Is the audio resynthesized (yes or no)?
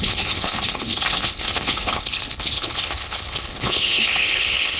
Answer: yes